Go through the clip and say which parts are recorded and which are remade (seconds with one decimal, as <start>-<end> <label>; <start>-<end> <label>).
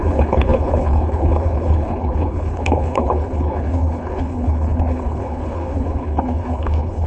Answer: 0.0-7.1 remade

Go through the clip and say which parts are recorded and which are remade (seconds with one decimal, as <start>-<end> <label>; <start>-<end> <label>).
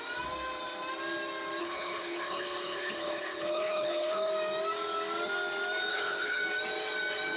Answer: 0.0-1.6 recorded; 1.6-4.3 remade; 4.3-5.9 recorded; 5.9-6.4 remade; 6.4-7.4 recorded